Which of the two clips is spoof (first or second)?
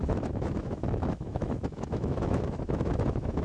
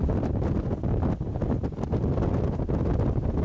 first